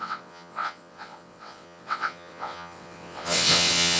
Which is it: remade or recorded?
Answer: remade